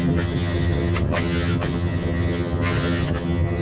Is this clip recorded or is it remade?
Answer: remade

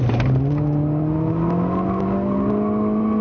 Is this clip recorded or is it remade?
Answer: recorded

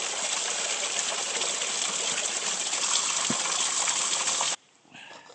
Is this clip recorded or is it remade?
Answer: recorded